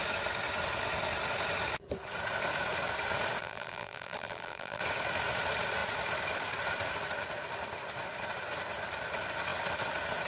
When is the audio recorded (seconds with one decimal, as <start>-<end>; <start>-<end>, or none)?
0.0-3.4; 4.8-10.3